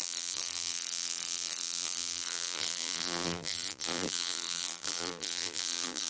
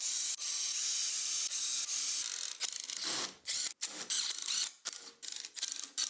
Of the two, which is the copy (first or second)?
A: first